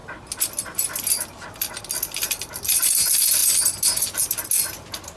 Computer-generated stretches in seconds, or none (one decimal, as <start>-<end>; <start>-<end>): none